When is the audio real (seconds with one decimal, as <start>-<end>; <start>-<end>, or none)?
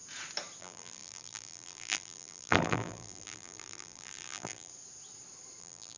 0.0-0.6; 4.7-5.6